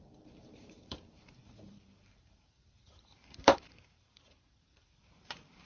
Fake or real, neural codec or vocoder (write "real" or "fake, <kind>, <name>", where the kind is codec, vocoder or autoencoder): fake, vocoder, BigVGAN v2